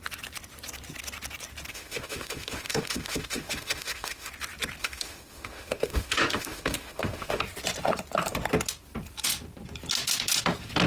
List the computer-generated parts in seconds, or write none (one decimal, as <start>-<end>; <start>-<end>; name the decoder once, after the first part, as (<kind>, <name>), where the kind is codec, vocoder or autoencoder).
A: 1.7-4.3 (autoencoder, DAC-VAE); 4.8-7.4